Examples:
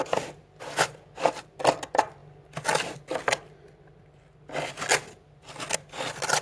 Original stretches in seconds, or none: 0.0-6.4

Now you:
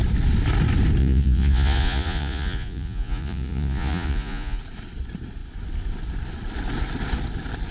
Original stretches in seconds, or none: 0.0-1.0; 4.6-7.7